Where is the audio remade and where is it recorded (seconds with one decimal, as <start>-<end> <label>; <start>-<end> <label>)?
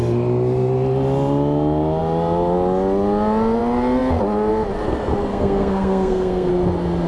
0.0-5.3 recorded; 5.3-6.5 remade; 6.5-7.1 recorded